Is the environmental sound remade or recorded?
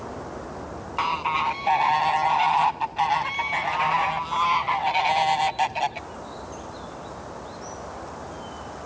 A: recorded